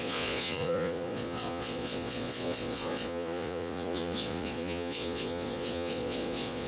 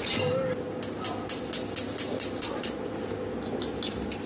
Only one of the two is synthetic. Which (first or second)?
first